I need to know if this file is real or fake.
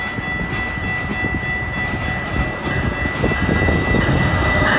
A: real